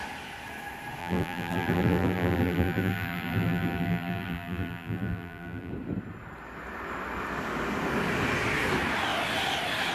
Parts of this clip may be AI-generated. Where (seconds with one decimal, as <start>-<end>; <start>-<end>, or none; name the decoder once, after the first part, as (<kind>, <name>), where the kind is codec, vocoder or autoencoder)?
1.0-5.7 (vocoder, BigVGAN v2)